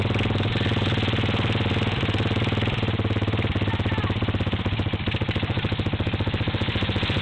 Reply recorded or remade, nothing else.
recorded